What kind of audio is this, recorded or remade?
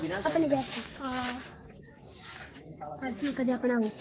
remade